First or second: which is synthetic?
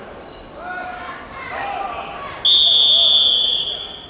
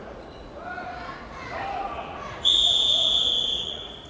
second